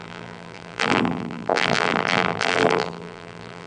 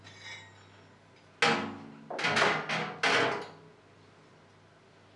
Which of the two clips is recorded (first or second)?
second